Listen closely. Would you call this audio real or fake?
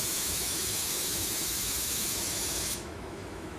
fake